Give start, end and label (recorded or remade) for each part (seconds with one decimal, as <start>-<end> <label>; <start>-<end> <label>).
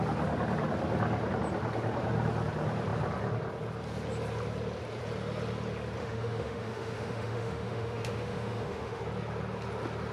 0.0-6.0 recorded; 6.0-9.0 remade; 9.0-10.1 recorded